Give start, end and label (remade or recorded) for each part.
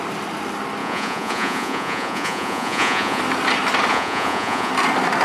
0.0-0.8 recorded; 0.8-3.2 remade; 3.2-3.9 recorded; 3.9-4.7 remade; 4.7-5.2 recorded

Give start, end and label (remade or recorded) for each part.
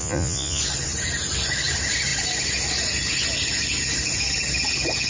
0.0-0.6 remade; 0.6-5.1 recorded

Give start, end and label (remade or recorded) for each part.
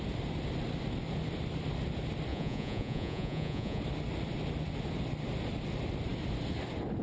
0.0-2.3 recorded; 2.3-3.8 remade; 3.8-7.0 recorded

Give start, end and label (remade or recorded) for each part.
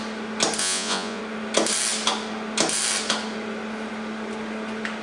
0.0-0.6 recorded; 0.6-1.2 remade; 1.2-5.0 recorded